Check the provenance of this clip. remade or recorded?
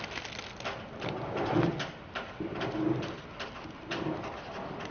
recorded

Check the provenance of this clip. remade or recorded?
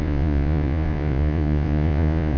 remade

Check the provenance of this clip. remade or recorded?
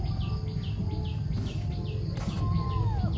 recorded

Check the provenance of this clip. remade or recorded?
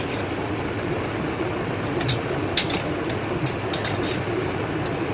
recorded